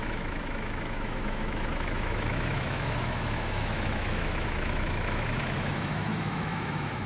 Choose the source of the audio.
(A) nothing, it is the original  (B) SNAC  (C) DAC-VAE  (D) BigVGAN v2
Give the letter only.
C